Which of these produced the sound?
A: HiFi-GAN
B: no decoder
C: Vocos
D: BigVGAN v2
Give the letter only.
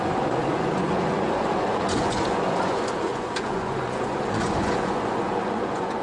C